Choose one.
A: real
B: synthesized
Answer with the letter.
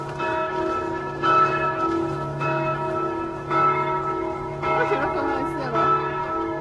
B